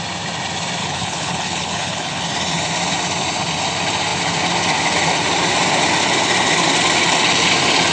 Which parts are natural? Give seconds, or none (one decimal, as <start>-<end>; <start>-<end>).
0.0-0.8; 2.2-7.9

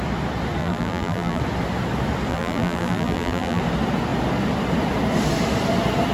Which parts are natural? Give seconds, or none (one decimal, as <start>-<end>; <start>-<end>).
0.0-0.6; 1.4-2.3; 3.6-6.1

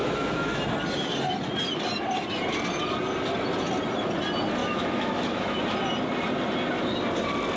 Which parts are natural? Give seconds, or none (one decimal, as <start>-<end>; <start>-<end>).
0.6-4.6; 5.6-7.6

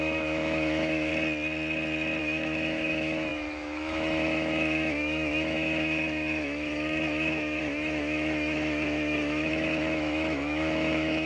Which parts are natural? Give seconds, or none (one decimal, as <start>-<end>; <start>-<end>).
1.1-2.2

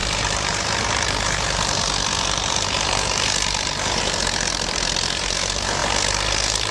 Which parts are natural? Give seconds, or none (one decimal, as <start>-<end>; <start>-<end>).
none

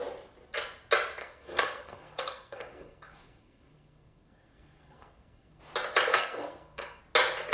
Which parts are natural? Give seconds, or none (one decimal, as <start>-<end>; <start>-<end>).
0.0-1.2; 5.6-6.1; 7.0-7.5

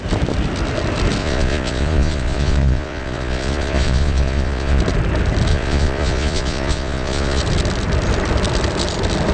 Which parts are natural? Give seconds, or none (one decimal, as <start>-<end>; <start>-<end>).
0.0-1.2; 4.8-5.5; 7.4-9.3